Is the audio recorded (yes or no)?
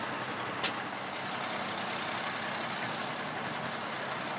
yes